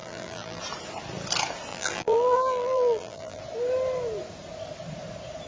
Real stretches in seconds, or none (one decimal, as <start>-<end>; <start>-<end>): 0.6-1.7; 3.4-5.5

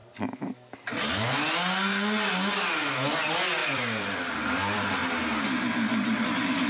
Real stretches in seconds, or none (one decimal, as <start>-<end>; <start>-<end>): 0.0-3.6; 4.4-6.7

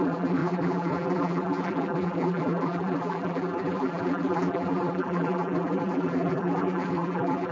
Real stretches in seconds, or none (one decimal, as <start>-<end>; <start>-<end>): none

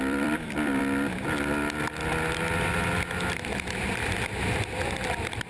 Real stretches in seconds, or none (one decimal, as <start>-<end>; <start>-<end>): 0.8-4.1

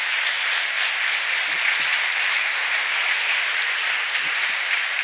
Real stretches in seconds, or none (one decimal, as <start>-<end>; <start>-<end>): 1.0-1.9

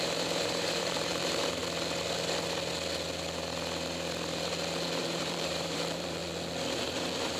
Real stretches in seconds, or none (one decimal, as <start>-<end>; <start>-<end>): 1.6-5.0; 6.2-6.7